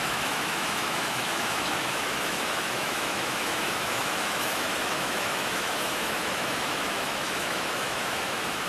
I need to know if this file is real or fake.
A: fake